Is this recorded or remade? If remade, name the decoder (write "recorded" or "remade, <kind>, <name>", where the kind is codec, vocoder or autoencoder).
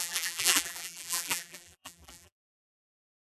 remade, vocoder, BigVGAN v2